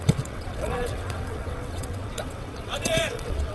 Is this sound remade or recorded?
remade